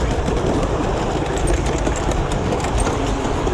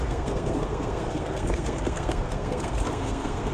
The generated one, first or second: second